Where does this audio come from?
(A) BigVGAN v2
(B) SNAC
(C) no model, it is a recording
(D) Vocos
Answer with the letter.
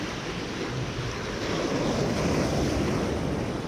C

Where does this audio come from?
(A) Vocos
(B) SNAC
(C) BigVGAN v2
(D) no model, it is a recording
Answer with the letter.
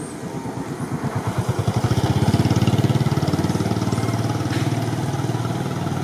D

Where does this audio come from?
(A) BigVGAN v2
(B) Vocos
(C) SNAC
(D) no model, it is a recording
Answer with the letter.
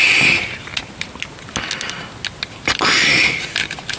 D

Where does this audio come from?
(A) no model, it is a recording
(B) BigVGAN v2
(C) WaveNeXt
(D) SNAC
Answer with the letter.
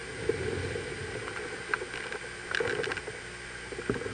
A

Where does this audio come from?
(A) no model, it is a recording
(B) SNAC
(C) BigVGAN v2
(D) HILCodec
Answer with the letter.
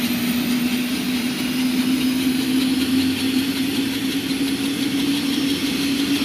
A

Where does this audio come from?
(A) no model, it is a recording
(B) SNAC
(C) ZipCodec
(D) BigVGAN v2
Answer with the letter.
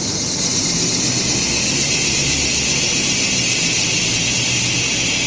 A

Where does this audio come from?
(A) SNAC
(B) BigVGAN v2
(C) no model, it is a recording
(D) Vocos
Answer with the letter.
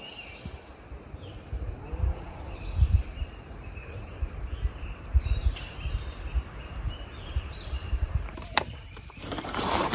B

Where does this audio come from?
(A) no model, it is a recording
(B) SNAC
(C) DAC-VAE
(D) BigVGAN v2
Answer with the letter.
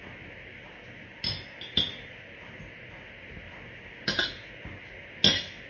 A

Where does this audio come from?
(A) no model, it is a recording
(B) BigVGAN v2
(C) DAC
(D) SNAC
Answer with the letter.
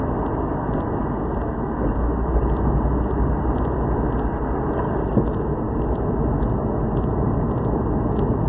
A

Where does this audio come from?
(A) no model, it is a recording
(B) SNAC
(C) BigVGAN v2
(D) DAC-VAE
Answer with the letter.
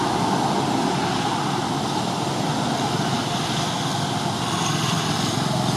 A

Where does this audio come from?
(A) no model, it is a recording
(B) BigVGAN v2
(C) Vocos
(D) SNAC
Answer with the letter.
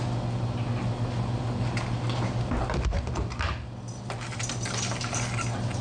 A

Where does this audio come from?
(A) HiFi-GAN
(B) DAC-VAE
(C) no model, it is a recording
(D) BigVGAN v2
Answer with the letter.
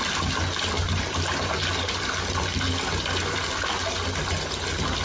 C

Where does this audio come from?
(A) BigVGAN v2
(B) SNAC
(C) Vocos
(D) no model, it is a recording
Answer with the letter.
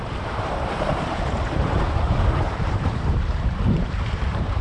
A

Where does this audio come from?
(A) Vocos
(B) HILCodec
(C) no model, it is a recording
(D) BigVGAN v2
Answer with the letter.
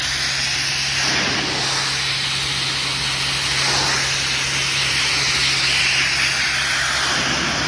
C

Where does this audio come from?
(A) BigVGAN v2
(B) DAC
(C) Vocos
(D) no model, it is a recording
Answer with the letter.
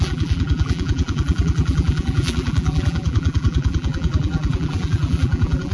A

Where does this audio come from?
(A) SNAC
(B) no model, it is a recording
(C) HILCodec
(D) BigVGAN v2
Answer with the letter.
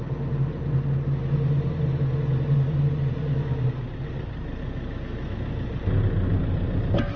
B